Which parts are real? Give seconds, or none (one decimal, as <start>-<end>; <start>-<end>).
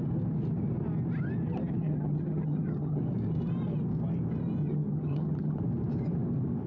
0.0-1.8; 3.0-4.6; 5.6-6.7